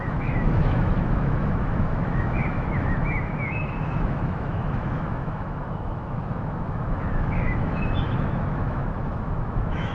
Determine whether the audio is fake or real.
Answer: fake